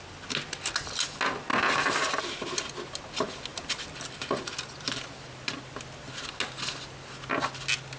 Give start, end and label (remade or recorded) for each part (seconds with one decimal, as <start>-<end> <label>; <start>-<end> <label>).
0.0-1.5 recorded; 1.5-2.2 remade; 2.2-3.5 recorded; 3.5-4.5 remade; 4.5-8.0 recorded

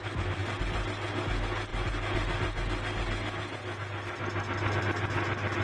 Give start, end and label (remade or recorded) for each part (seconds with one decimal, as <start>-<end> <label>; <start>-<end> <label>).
0.0-5.6 recorded

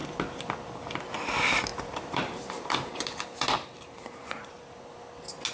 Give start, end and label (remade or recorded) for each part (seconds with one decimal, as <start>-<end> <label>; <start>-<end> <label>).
0.0-1.7 recorded; 1.7-4.6 remade; 4.6-5.5 recorded

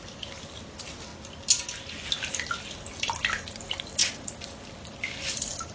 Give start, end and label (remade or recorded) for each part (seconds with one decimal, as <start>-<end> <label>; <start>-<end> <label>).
0.0-1.1 remade; 1.1-2.1 recorded; 2.1-4.0 remade; 4.0-5.2 recorded; 5.2-5.7 remade